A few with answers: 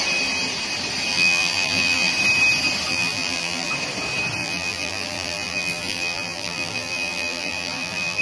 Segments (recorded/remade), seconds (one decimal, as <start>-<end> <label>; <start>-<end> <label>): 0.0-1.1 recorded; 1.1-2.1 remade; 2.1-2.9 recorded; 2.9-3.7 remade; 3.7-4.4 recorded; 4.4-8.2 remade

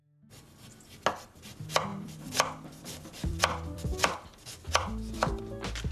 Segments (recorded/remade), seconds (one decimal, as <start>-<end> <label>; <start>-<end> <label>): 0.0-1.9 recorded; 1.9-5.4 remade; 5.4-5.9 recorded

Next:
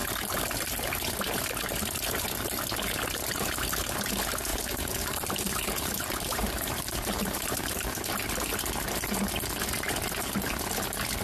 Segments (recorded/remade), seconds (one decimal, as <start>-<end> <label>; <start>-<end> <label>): 0.0-4.5 recorded; 4.5-8.1 remade; 8.1-11.2 recorded

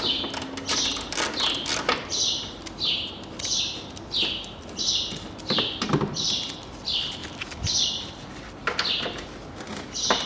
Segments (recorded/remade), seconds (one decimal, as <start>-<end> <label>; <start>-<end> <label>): 0.0-10.3 remade

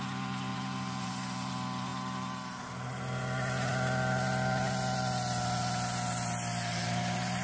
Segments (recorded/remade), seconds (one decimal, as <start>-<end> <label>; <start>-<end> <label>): 0.0-0.5 recorded; 0.5-1.5 remade; 1.5-7.4 recorded

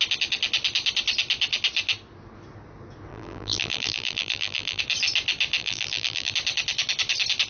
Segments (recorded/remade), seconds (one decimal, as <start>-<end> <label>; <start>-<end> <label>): 0.0-3.1 recorded; 3.1-4.8 remade; 4.8-5.6 recorded; 5.6-6.3 remade; 6.3-7.5 recorded